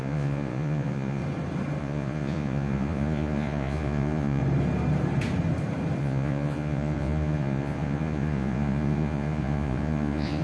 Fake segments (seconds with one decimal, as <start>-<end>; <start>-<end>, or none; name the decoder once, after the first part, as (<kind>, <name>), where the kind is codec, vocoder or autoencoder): 0.0-1.2 (vocoder, Vocos); 1.8-4.4; 6.0-10.4